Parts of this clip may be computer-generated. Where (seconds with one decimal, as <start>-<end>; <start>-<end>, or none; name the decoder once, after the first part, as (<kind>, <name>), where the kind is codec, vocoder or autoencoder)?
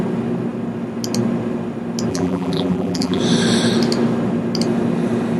2.1-3.2 (vocoder, BigVGAN v2)